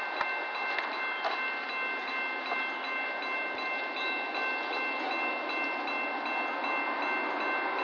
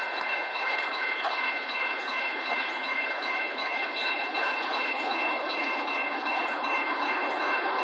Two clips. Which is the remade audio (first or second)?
second